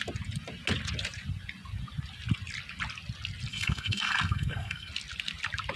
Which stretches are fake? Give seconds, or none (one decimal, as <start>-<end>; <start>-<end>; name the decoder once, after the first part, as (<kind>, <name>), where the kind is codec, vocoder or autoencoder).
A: 3.5-4.9 (codec, SNAC)